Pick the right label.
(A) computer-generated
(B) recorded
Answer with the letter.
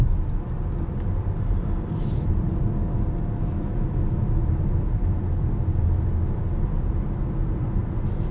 B